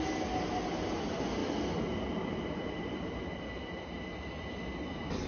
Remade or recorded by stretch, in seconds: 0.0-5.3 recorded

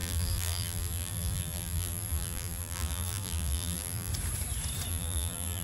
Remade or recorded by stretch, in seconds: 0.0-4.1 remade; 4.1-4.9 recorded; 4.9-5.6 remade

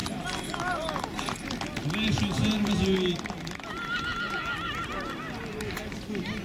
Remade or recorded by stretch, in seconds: 0.0-6.4 recorded

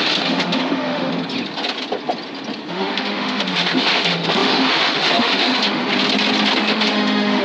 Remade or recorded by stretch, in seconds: 0.0-1.1 remade; 1.1-2.7 recorded; 2.7-5.8 remade; 5.8-6.6 recorded; 6.6-7.4 remade